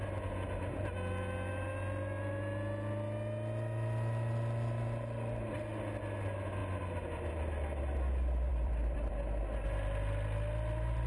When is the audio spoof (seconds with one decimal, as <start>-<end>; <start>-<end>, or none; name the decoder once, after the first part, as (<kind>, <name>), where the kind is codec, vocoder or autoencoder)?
6.6-7.3 (vocoder, BigVGAN v2); 8.5-9.1